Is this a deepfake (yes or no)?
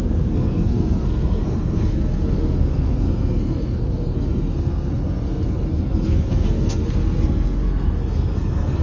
yes